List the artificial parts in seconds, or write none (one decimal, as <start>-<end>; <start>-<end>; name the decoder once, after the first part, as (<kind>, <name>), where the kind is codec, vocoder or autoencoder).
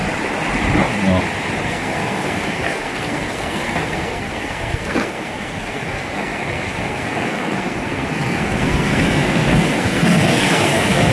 1.6-11.1 (codec, SNAC)